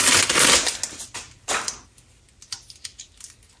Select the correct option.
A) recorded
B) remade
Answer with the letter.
A